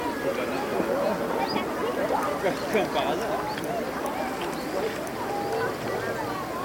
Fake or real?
real